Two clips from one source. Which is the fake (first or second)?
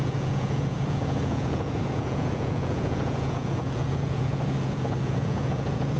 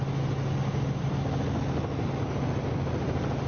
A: first